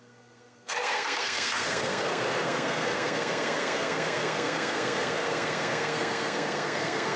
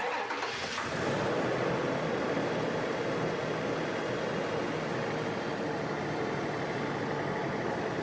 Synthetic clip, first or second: first